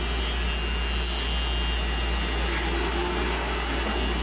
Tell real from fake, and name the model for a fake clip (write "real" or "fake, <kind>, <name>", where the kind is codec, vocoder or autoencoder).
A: real